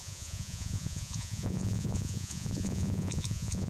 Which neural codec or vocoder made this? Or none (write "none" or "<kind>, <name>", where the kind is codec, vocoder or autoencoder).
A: vocoder, Vocos